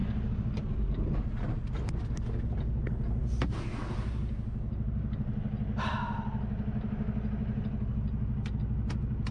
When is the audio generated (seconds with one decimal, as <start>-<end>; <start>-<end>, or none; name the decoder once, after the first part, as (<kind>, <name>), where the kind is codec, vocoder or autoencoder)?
none